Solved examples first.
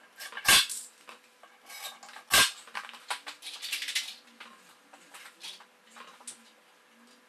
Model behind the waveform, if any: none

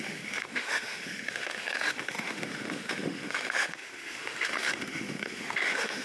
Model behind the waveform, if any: autoencoder, DAC-VAE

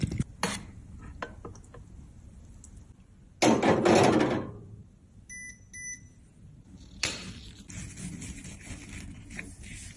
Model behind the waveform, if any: none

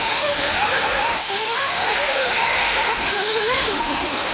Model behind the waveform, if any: autoencoder, DAC-VAE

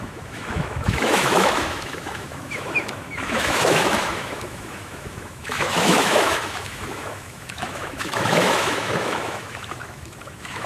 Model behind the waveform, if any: autoencoder, DAC-VAE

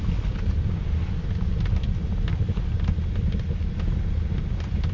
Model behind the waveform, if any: none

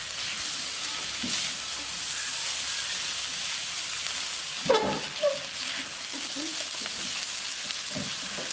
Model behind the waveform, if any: none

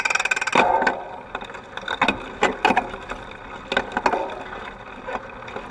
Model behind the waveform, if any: none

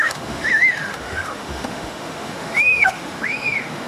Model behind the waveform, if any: autoencoder, DAC-VAE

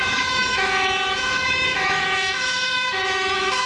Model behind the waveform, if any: autoencoder, DAC-VAE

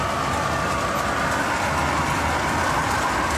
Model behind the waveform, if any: none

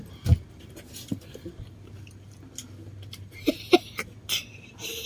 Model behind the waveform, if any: none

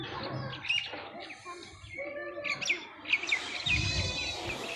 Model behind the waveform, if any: none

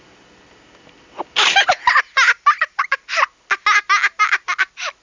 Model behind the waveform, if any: none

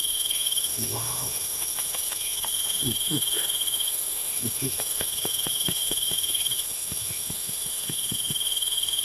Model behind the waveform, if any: autoencoder, DAC-VAE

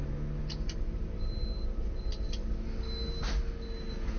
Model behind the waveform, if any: none